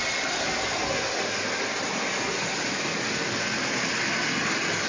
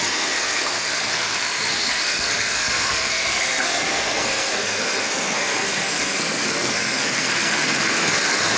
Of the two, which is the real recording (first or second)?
first